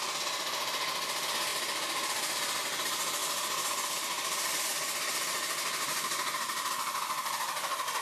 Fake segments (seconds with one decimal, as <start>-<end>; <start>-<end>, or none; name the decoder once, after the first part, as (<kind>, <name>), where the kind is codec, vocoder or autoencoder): 1.5-2.6 (vocoder, BigVGAN v2); 3.2-6.7